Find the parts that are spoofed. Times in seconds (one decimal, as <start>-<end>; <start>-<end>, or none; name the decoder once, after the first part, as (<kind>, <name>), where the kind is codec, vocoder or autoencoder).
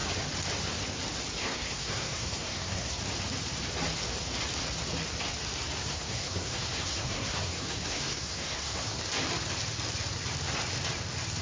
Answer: 1.4-3.0 (codec, SNAC); 5.8-9.0